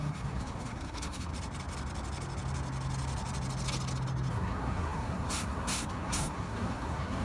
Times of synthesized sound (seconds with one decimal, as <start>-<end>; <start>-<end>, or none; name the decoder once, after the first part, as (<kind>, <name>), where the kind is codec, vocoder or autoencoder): 0.0-1.3 (codec, SNAC); 4.3-7.2